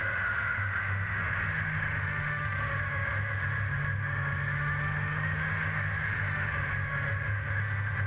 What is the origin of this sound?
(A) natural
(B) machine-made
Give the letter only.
B